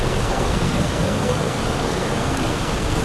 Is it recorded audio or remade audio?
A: remade